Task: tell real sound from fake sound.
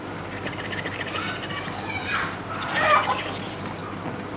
real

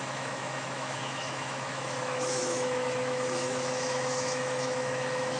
fake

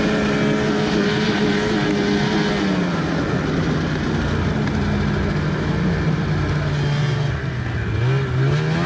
real